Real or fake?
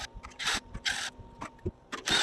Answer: fake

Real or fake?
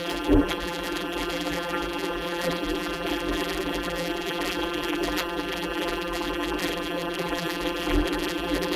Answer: fake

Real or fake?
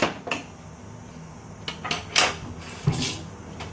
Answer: real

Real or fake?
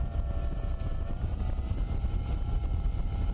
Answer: fake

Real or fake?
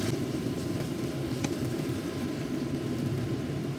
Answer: fake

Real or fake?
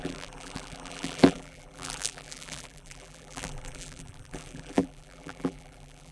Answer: fake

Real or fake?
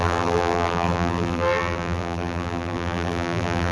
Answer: fake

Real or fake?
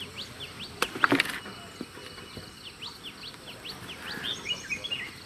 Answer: real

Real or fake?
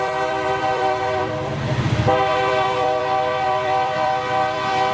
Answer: fake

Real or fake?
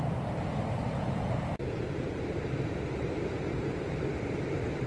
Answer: fake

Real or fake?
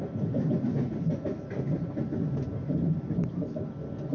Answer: real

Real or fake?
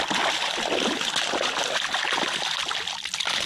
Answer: real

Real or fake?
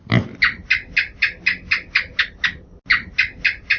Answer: real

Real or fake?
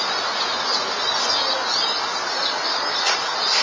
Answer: real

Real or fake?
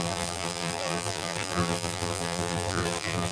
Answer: fake